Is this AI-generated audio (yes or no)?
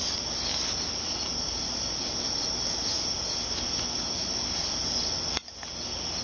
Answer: no